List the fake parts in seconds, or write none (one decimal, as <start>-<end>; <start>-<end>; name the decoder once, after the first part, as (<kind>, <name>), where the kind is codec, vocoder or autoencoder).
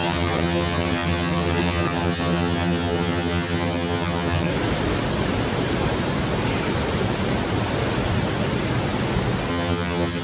0.0-4.5 (vocoder, HiFi-GAN); 9.5-10.2